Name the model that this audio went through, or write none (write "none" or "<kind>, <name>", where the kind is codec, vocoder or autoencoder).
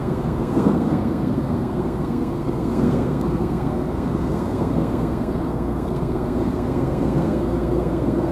codec, SNAC